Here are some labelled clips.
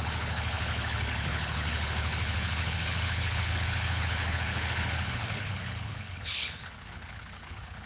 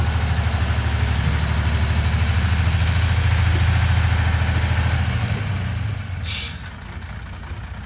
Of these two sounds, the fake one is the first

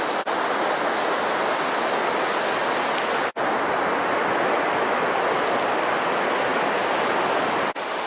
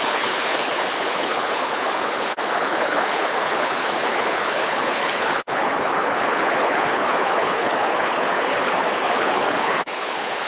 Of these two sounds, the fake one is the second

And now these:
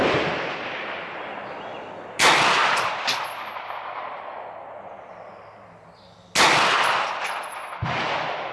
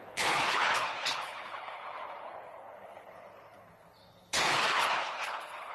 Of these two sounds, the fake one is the second